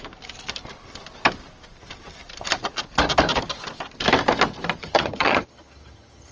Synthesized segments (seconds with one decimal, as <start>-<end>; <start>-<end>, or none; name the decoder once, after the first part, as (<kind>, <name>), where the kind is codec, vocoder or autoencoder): 4.8-6.3 (vocoder, HiFi-GAN)